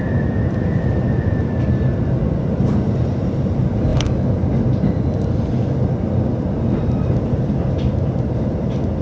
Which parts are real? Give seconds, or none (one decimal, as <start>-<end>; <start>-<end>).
0.0-9.0